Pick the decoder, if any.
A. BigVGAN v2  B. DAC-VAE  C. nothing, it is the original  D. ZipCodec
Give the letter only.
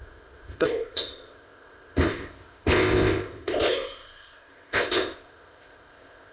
D